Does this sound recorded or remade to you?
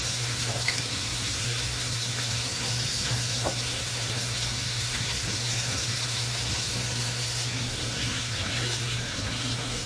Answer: remade